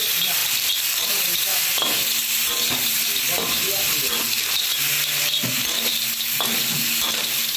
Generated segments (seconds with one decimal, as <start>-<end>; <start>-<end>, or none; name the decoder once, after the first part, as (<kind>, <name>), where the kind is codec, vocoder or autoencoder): 0.0-2.2 (vocoder, BigVGAN v2); 6.8-7.6